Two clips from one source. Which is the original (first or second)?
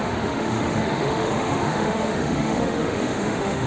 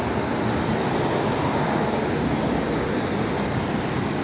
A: second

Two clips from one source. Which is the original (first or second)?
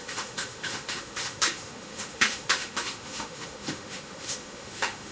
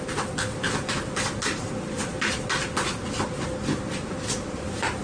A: second